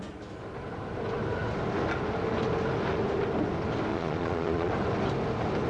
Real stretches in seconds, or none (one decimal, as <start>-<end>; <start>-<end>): 0.0-3.9; 4.7-5.7